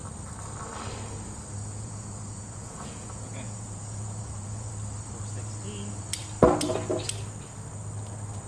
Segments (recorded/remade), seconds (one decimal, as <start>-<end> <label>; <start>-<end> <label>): 0.0-1.7 recorded; 1.7-4.7 remade; 4.7-8.5 recorded